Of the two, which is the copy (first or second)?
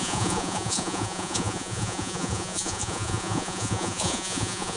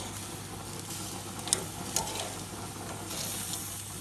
first